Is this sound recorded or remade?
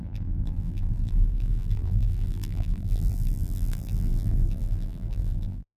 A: remade